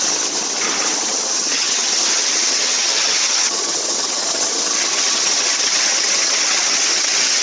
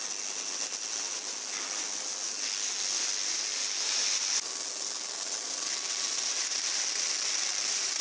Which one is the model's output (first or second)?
first